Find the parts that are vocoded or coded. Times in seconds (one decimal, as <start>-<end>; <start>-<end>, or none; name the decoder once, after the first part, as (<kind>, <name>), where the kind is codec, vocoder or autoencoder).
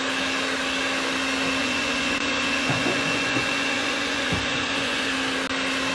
1.6-5.1 (vocoder, Vocos)